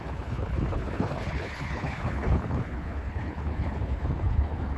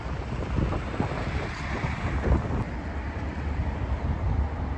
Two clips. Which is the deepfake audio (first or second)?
first